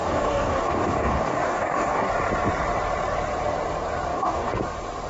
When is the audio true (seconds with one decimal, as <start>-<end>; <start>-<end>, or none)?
2.1-4.1; 4.6-5.1